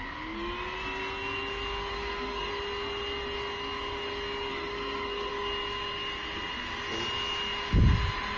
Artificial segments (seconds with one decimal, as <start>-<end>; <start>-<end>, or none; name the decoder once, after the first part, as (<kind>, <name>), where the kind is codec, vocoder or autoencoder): 1.9-2.5 (codec, SNAC); 4.5-5.3